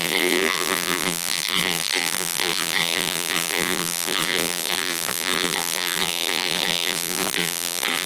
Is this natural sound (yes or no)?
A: no